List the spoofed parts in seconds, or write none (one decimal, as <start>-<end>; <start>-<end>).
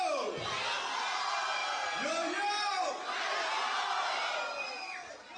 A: none